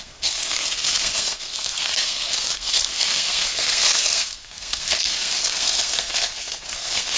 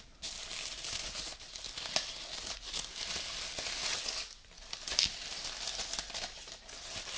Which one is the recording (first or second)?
second